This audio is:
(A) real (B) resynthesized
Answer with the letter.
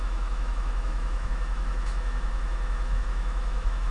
B